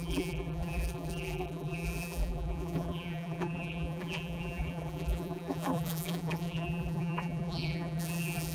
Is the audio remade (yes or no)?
yes